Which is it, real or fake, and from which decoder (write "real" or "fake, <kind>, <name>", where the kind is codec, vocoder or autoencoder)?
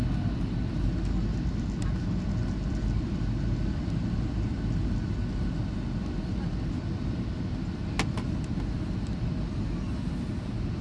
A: real